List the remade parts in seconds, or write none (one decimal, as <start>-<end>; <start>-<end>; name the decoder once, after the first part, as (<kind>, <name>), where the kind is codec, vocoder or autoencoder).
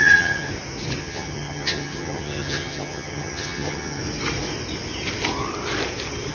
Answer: 0.0-0.5 (vocoder, HiFi-GAN); 1.0-4.0